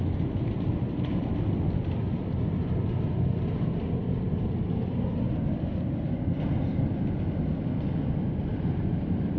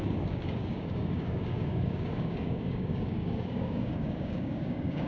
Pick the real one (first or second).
first